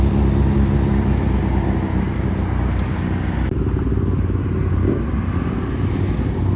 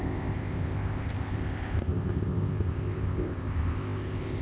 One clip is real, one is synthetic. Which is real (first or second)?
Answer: first